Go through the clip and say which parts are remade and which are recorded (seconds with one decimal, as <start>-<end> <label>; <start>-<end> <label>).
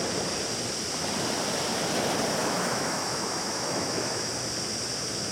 0.0-2.4 recorded; 2.4-4.3 remade; 4.3-5.3 recorded